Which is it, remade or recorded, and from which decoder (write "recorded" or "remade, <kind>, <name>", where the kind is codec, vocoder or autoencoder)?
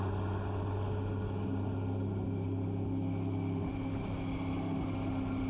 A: recorded